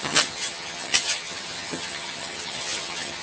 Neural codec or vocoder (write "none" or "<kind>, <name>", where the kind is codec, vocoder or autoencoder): vocoder, HiFi-GAN